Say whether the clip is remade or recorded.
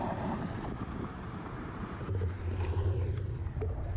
remade